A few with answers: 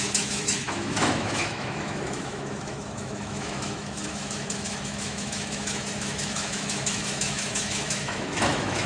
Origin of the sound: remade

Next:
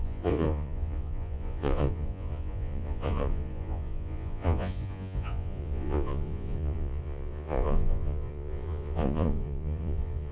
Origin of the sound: remade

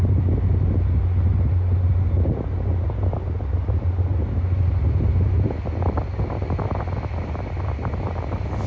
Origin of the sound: recorded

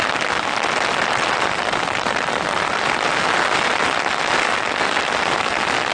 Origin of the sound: recorded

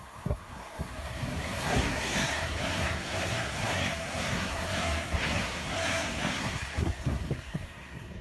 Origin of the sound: remade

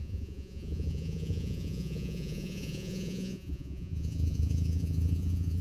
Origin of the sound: remade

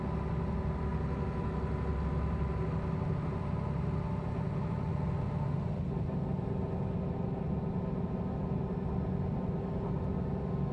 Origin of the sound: recorded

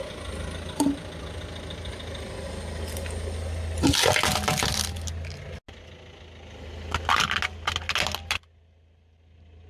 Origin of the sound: recorded